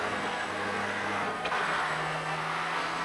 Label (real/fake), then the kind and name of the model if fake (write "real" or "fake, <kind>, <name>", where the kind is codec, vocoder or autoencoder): fake, codec, SNAC